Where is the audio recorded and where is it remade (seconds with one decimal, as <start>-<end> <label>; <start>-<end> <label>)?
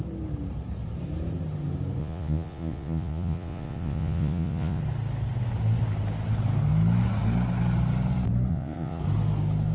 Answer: 0.0-2.0 recorded; 2.0-4.8 remade; 4.8-8.5 recorded; 8.5-9.0 remade; 9.0-9.7 recorded